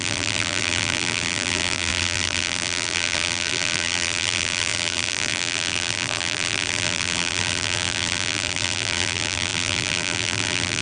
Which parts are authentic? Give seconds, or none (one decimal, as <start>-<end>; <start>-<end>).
none